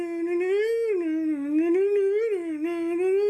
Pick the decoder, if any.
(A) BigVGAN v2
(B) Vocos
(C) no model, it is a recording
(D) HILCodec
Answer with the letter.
C